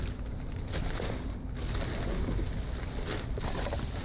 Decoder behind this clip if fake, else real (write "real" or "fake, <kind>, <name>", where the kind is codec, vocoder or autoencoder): real